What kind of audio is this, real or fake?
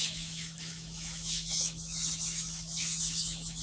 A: fake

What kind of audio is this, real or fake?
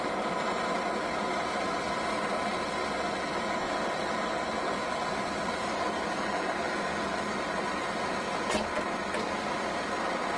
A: real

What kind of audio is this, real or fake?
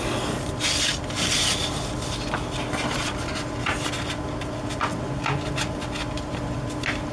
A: real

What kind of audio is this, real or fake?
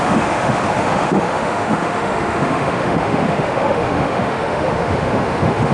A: fake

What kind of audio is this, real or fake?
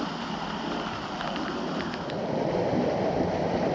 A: real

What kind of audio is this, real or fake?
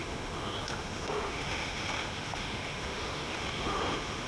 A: fake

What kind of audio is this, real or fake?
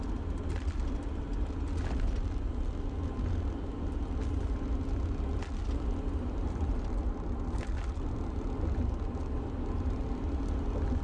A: real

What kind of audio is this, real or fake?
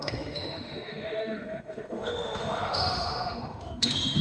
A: fake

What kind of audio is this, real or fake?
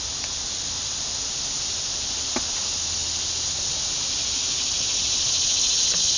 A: real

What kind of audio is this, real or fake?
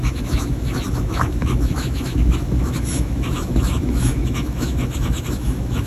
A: fake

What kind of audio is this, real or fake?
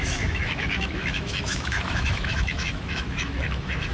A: fake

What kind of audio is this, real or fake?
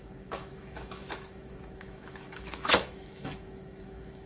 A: fake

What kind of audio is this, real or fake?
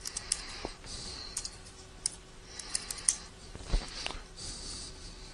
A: real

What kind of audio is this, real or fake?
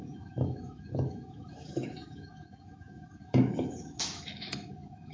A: fake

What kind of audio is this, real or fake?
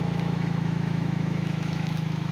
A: fake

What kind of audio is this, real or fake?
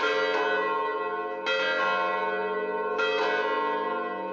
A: real